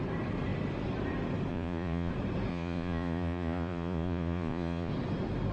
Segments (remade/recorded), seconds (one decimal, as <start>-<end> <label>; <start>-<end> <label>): 0.0-1.5 recorded; 1.5-2.1 remade; 2.1-2.5 recorded; 2.5-4.9 remade; 4.9-5.5 recorded

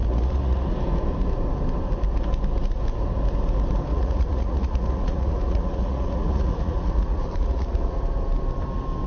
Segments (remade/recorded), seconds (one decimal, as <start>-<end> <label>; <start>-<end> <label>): 0.0-0.7 remade; 0.7-3.9 recorded; 3.9-8.0 remade; 8.0-9.1 recorded

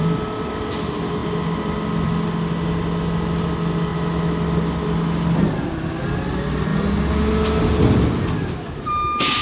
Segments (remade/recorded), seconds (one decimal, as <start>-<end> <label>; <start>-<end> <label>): 0.0-9.4 recorded

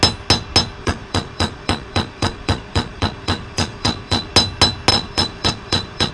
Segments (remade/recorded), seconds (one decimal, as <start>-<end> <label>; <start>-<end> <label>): 0.0-0.8 recorded; 0.8-4.3 remade; 4.3-4.9 recorded; 4.9-6.1 remade

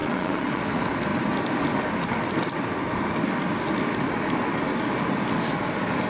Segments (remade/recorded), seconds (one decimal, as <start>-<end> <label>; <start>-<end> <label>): 0.0-0.6 remade; 0.6-6.1 recorded